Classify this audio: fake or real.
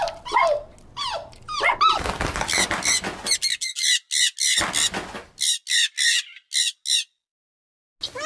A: real